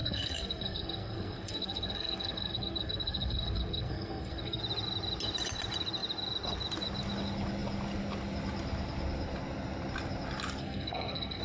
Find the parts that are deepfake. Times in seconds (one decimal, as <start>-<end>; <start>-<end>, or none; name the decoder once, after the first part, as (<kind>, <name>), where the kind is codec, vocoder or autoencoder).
0.0-4.6 (codec, SNAC); 10.6-11.4